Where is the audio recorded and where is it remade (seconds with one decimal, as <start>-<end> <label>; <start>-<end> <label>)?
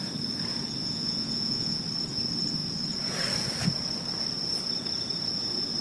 0.0-0.8 recorded; 0.8-1.8 remade; 1.8-5.8 recorded